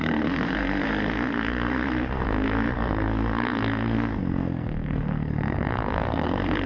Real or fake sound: fake